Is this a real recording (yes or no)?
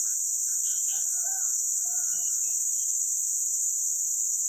no